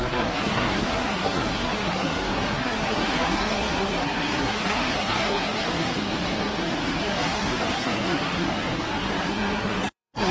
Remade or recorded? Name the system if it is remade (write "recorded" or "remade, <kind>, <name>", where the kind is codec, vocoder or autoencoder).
remade, codec, SNAC